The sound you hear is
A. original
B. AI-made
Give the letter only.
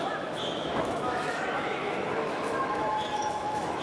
B